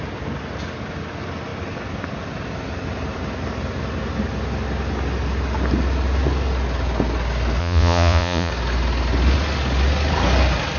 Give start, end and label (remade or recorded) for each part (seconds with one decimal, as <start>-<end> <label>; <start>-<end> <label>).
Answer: 0.0-7.6 recorded; 7.6-8.5 remade; 8.5-10.8 recorded